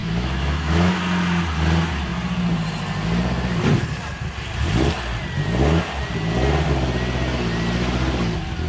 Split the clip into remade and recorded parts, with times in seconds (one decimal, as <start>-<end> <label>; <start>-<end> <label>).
0.0-1.0 remade; 1.0-8.7 recorded